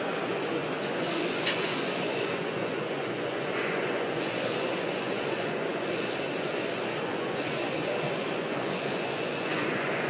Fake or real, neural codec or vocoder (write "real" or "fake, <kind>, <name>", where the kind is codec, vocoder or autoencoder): fake, vocoder, Vocos